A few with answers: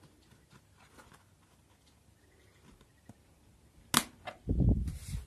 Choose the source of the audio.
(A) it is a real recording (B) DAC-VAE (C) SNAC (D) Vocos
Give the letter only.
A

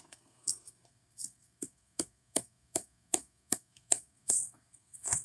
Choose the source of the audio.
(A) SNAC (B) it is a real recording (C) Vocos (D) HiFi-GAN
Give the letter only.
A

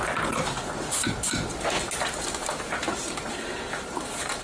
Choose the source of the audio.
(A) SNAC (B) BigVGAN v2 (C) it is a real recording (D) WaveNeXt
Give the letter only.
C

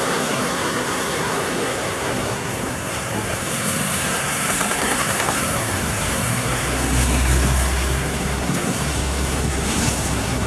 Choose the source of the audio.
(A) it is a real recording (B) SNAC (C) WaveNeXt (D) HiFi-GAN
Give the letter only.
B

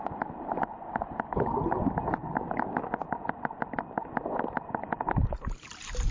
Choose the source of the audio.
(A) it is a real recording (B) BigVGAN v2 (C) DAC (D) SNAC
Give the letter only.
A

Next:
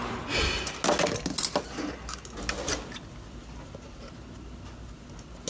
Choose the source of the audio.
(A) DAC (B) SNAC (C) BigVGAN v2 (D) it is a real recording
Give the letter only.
D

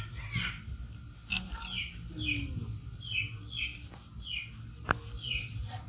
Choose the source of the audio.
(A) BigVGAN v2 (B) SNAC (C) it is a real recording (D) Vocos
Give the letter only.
C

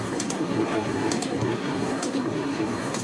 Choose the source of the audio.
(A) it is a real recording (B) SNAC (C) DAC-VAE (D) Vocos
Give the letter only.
B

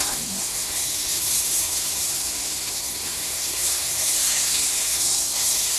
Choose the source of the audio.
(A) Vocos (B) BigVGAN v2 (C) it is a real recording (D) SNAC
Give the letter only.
D